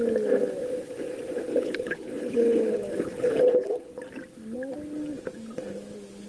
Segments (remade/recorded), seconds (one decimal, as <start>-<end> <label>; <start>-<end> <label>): 0.0-1.5 recorded; 1.5-3.9 remade; 3.9-6.3 recorded

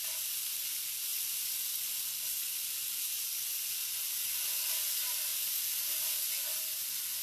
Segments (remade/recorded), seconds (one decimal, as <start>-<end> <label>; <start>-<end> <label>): 0.0-7.2 recorded

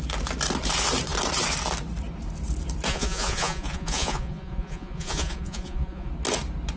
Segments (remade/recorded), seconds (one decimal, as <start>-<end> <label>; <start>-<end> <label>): 0.0-2.9 recorded; 2.9-6.1 remade; 6.1-6.8 recorded